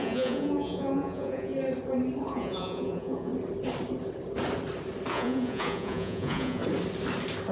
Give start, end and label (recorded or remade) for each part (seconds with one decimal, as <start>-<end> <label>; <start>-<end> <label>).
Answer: 0.0-1.5 remade; 1.5-2.3 recorded; 2.3-3.3 remade; 3.3-5.1 recorded; 5.1-6.6 remade; 6.6-7.5 recorded